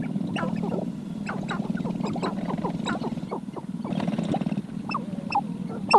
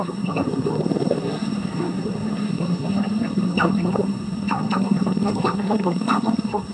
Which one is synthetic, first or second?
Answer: second